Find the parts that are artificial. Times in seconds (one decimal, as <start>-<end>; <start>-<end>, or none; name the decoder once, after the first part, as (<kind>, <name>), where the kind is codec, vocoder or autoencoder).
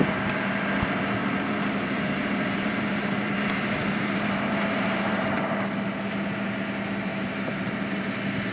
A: 1.2-5.4 (vocoder, BigVGAN v2); 7.1-7.7